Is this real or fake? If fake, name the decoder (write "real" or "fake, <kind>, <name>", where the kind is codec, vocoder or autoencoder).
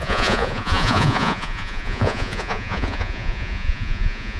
fake, vocoder, Vocos